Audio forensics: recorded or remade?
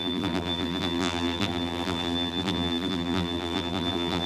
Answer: remade